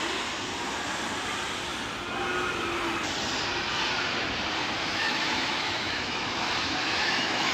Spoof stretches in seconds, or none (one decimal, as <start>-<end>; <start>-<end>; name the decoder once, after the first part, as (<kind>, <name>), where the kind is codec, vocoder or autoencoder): 4.8-7.5 (autoencoder, DAC-VAE)